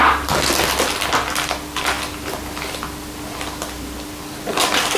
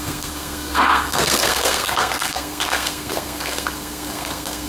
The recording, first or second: first